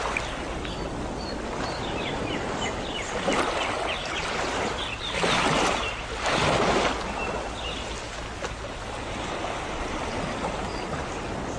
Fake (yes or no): no